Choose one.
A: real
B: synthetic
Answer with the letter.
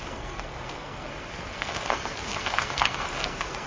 B